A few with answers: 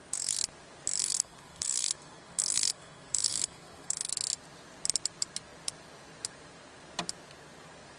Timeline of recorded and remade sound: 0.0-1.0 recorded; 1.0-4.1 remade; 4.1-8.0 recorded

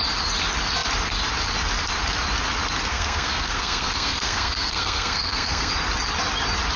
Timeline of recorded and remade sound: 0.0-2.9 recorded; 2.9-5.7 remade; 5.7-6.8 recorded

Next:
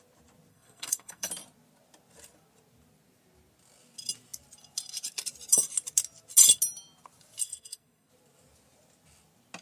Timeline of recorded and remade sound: 0.0-0.5 recorded; 0.5-1.3 remade; 1.3-7.4 recorded; 7.4-8.1 remade; 8.1-9.6 recorded

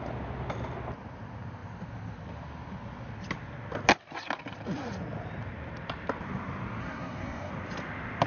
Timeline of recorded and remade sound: 0.0-6.8 recorded; 6.8-7.5 remade; 7.5-8.3 recorded